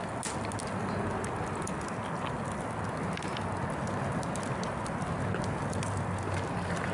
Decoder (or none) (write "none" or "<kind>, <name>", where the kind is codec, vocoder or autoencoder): none